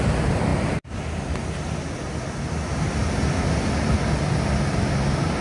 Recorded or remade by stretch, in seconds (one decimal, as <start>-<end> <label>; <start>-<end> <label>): 0.0-5.4 recorded